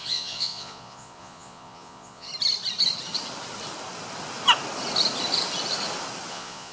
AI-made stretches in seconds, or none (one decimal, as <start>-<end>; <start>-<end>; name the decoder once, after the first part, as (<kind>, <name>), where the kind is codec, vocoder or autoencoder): 0.0-2.3 (vocoder, Vocos); 6.3-6.7